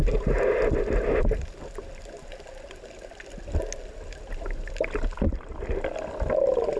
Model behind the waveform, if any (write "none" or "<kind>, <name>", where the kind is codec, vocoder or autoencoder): none